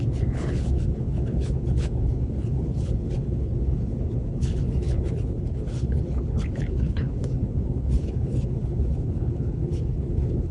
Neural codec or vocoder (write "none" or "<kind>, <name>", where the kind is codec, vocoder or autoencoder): codec, HILCodec